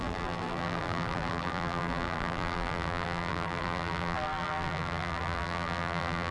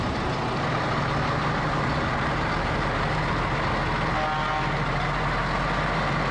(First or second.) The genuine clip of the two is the second